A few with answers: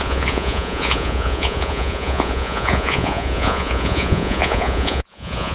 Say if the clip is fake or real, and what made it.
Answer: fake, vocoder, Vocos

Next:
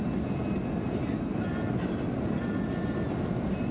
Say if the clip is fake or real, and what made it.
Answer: real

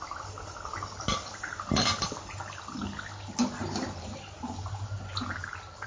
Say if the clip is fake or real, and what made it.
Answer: real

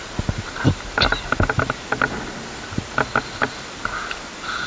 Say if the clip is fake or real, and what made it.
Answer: real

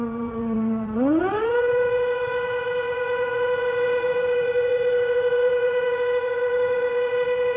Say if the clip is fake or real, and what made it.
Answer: fake, vocoder, WaveNeXt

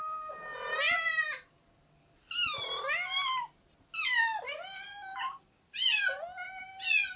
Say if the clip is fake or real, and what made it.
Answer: real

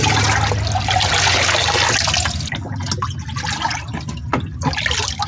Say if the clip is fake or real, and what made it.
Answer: real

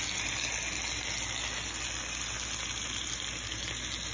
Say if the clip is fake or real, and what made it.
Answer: real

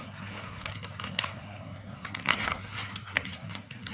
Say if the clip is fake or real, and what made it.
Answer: fake, codec, SNAC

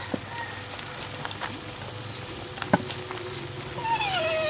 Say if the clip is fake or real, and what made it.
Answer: real